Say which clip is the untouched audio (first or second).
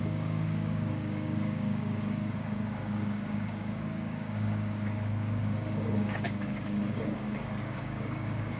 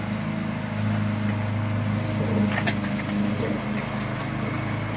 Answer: second